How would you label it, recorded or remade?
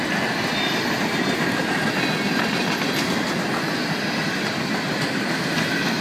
recorded